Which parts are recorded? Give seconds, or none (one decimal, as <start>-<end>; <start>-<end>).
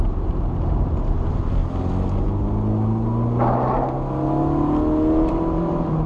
1.6-5.3